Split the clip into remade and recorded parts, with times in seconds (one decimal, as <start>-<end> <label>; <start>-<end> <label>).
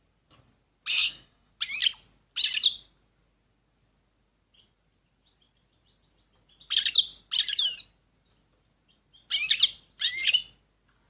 0.0-0.9 recorded; 0.9-1.5 remade; 1.5-11.1 recorded